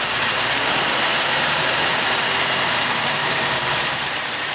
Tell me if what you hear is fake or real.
fake